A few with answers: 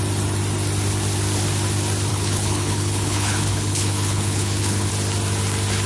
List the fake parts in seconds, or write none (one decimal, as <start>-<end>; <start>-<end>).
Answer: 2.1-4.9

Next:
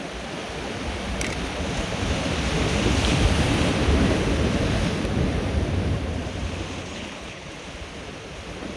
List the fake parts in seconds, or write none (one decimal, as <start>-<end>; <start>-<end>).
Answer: 6.8-7.5

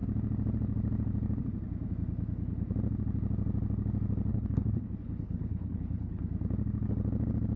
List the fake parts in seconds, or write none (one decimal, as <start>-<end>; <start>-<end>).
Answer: 4.3-6.2

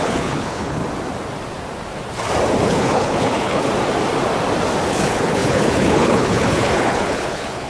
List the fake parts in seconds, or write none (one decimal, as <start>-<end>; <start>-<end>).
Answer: 0.0-0.8; 2.6-3.7; 4.9-7.7

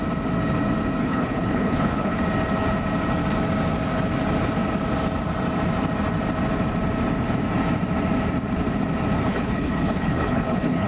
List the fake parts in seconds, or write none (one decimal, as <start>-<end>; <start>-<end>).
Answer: 1.0-2.2; 9.3-10.9

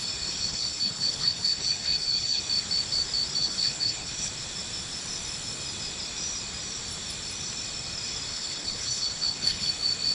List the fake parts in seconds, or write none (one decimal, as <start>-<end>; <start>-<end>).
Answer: 0.5-2.4; 3.4-4.3; 8.3-9.7

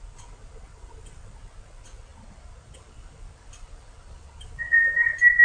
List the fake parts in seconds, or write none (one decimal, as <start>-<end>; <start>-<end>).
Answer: none